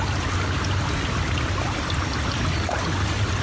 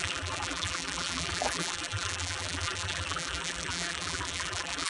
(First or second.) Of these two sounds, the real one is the first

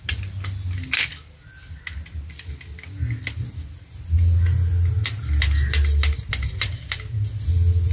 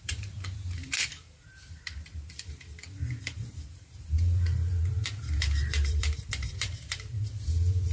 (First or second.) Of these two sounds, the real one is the first